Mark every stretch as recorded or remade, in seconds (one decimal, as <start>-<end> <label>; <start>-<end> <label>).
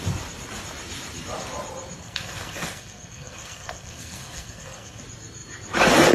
0.0-2.0 recorded; 2.0-5.0 remade; 5.0-6.1 recorded